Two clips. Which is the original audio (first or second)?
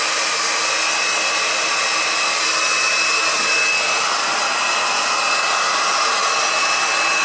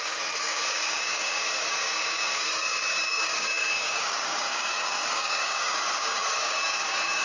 first